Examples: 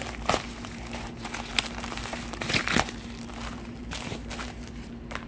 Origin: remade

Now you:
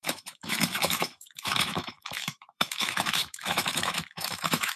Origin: remade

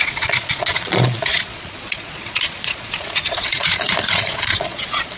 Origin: remade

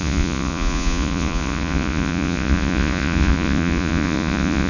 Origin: remade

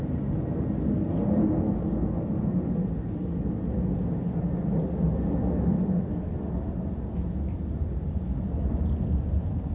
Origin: recorded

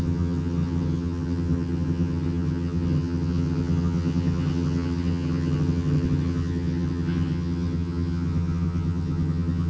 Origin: remade